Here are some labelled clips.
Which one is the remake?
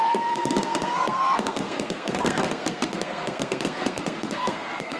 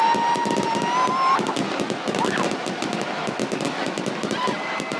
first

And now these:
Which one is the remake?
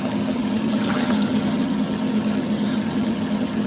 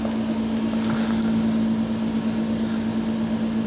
first